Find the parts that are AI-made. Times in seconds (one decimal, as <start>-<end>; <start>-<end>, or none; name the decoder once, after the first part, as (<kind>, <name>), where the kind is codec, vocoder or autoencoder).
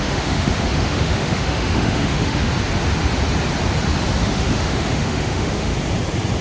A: 0.0-2.5 (autoencoder, DAC-VAE); 4.2-5.7